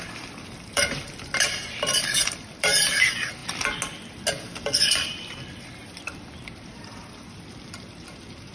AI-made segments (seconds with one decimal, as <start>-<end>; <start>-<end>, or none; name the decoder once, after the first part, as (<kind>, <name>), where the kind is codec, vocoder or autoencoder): 0.0-3.4 (vocoder, BigVGAN v2); 4.6-5.8; 6.7-8.5